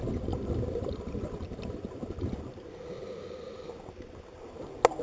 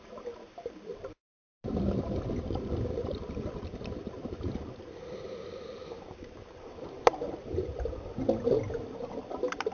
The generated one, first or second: second